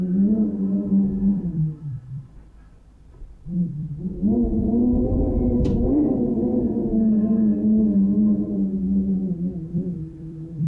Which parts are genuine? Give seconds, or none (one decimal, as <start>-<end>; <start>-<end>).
0.0-1.3; 3.9-9.7